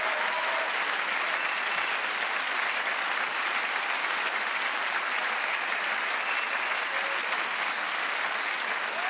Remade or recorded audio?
recorded